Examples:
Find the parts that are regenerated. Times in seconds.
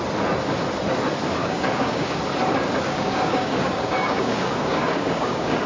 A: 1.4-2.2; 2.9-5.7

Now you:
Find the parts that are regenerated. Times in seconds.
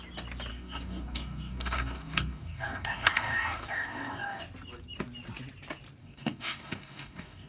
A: 0.5-4.4; 6.0-7.5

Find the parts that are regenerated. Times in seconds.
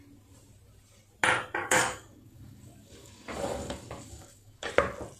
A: 1.6-4.7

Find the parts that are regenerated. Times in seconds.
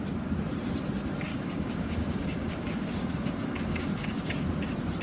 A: 1.3-4.3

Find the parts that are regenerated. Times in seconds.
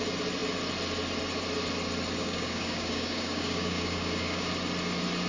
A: 2.2-4.5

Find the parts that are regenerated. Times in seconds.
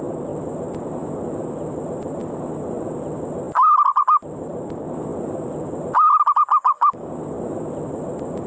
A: 6.6-7.1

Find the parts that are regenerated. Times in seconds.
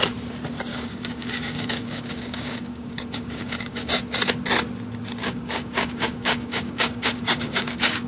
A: 0.7-3.9; 5.2-8.1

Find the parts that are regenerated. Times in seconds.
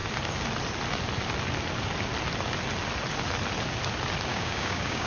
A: 4.3-5.1